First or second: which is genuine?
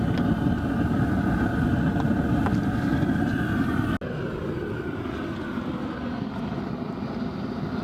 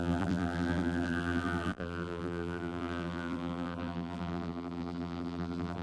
first